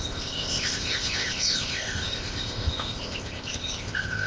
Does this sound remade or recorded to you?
remade